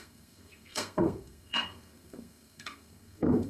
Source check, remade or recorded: remade